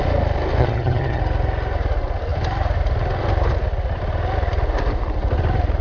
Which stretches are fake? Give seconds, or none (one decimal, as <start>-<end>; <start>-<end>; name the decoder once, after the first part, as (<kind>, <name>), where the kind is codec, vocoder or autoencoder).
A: 0.6-1.2 (vocoder, HiFi-GAN)